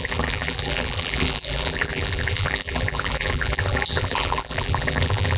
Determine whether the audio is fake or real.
fake